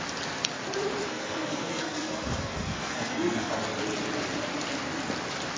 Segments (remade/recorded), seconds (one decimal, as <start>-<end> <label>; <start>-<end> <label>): 0.0-1.1 recorded; 1.1-3.6 remade; 3.6-5.6 recorded